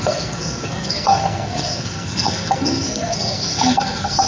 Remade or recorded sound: remade